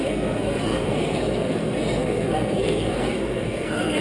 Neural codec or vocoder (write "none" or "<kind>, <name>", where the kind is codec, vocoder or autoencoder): codec, SNAC